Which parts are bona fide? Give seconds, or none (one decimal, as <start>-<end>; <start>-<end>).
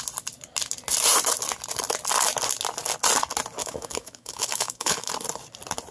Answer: 0.0-3.6; 5.1-5.9